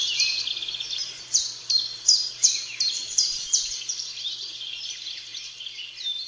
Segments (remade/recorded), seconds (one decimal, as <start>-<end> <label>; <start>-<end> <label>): 0.0-0.5 remade; 0.5-1.0 recorded; 1.0-1.7 remade; 1.7-2.4 recorded; 2.4-4.5 remade; 4.5-6.3 recorded